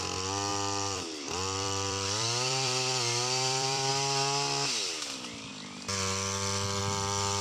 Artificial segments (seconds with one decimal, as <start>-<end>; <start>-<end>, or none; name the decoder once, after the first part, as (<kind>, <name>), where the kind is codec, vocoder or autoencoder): 0.5-3.9 (vocoder, BigVGAN v2)